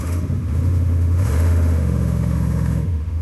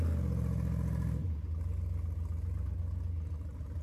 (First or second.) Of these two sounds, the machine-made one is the first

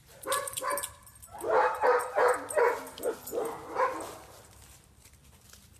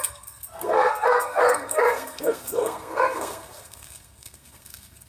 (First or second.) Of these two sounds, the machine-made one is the second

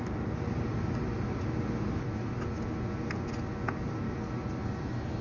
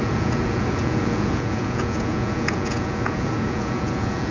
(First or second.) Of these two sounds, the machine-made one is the second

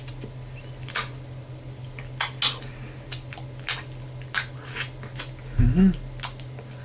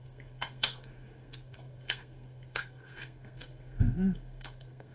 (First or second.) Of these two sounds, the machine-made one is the second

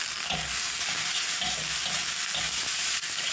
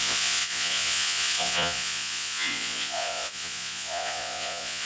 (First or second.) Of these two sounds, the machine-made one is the second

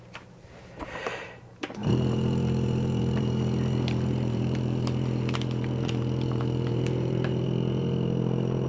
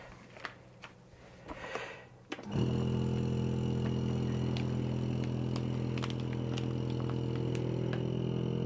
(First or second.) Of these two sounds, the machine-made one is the first